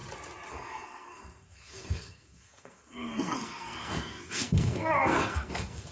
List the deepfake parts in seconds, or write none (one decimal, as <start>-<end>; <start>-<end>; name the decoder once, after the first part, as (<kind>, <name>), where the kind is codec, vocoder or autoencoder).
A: 0.5-5.9 (codec, SNAC)

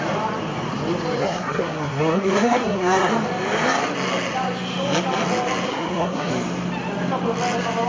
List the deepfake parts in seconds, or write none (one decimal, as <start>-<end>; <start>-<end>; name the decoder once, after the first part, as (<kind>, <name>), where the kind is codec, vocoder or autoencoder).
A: 1.2-3.1 (codec, SNAC); 5.7-6.3

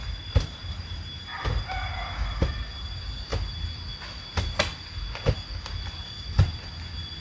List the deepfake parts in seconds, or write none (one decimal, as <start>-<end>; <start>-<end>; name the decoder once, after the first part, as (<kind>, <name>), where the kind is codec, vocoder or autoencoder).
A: none